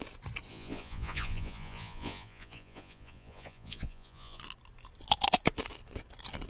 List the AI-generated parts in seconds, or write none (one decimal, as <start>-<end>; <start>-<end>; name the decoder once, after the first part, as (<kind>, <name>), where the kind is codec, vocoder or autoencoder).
0.5-4.4 (vocoder, Vocos)